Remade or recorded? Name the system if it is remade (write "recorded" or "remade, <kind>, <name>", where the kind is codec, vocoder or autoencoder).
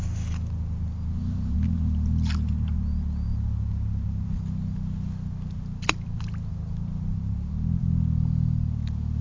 recorded